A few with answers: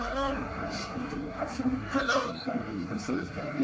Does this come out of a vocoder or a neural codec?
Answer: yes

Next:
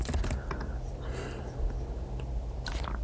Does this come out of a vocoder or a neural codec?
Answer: no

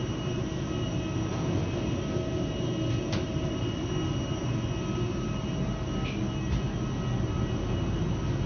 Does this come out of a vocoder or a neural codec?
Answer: no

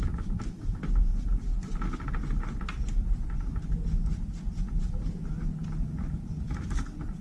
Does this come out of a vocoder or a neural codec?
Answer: no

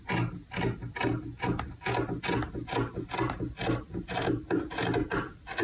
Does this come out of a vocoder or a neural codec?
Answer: no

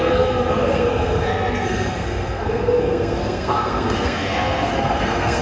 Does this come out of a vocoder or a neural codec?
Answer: yes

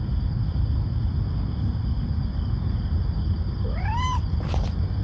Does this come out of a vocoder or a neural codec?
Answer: no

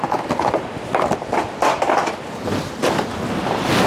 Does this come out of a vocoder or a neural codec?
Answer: no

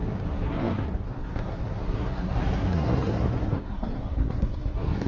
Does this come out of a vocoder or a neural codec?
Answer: yes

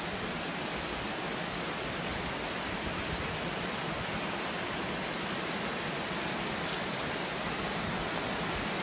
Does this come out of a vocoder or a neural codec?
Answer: no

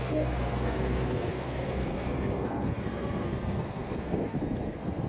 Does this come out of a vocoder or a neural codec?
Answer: yes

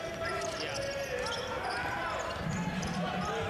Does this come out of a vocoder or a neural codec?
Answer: no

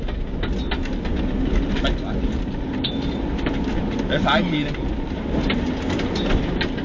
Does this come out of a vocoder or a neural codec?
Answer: no